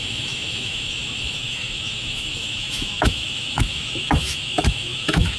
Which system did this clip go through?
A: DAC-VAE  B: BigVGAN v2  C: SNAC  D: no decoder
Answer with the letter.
A